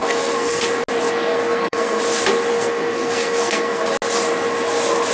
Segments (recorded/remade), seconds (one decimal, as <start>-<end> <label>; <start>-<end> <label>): 0.0-0.6 remade; 0.6-1.3 recorded; 1.3-2.0 remade; 2.0-2.5 recorded; 2.5-3.9 remade; 3.9-5.1 recorded